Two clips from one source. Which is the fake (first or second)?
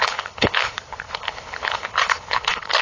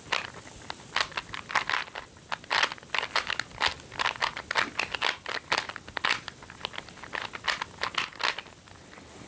first